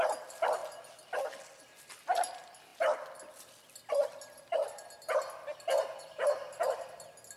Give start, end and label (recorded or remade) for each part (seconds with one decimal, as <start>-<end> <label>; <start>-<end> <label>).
0.0-7.4 recorded